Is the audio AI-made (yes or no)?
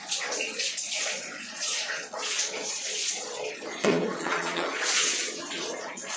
yes